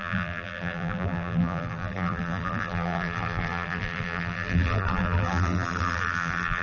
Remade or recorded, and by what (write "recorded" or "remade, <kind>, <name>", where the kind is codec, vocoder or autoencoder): remade, vocoder, BigVGAN v2